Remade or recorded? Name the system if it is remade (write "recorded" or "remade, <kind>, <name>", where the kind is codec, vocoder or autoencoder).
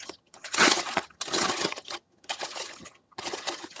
remade, vocoder, HiFi-GAN